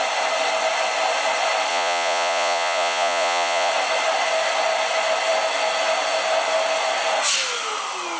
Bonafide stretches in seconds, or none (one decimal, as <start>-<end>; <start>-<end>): 0.0-1.7; 3.7-8.2